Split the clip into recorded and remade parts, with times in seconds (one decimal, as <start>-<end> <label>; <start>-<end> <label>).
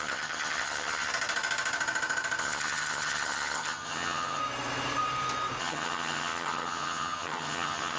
0.0-1.1 remade; 1.1-2.4 recorded; 2.4-4.4 remade; 4.4-5.6 recorded; 5.6-8.0 remade